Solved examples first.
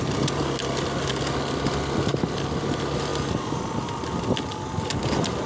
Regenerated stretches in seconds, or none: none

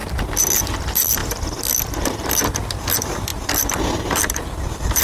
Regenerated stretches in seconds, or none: 0.6-5.0 (vocoder, BigVGAN v2)

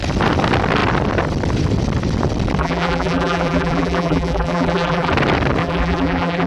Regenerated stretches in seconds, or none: 2.6-5.1 (vocoder, BigVGAN v2); 5.6-6.5